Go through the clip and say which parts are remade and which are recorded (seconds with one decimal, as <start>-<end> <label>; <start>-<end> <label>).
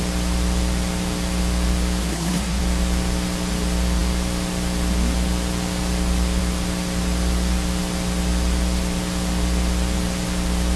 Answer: 0.0-2.0 recorded; 2.0-2.6 remade; 2.6-10.8 recorded